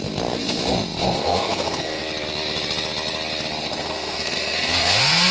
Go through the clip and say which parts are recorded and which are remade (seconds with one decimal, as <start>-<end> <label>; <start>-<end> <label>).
0.0-2.0 remade; 2.0-3.6 recorded; 3.6-5.3 remade